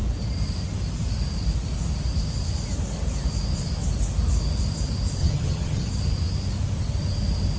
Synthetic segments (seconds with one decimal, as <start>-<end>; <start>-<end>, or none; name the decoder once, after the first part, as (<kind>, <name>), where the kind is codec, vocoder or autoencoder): 5.2-5.9 (vocoder, HiFi-GAN)